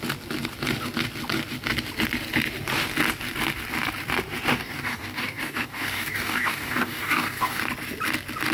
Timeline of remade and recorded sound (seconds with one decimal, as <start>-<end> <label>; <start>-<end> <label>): 0.0-4.5 recorded; 4.5-7.6 remade; 7.6-8.5 recorded